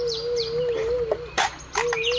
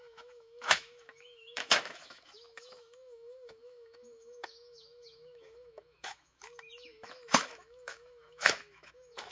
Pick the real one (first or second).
first